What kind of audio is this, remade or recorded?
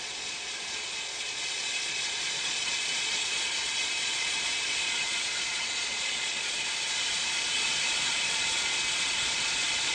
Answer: remade